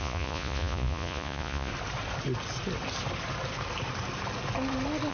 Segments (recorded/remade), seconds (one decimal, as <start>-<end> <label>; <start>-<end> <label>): 0.0-1.7 remade; 1.7-5.1 recorded